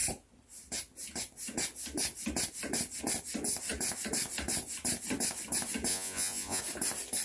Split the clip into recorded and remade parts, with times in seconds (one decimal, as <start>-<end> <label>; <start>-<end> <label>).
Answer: 0.0-5.9 recorded; 5.9-6.6 remade; 6.6-7.2 recorded